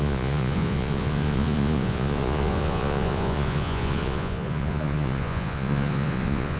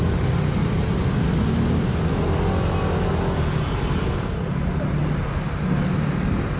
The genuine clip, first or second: second